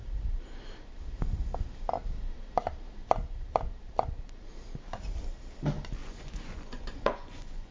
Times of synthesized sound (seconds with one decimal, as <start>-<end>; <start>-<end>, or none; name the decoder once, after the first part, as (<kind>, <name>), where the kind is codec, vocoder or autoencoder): 6.0-7.7 (vocoder, Vocos)